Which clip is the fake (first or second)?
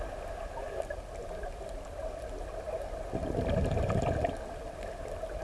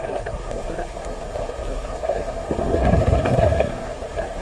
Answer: second